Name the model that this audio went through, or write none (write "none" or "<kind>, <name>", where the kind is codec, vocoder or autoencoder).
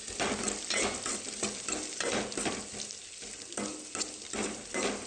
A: none